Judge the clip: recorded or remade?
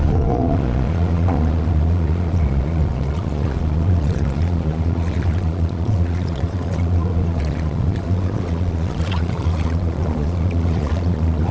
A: remade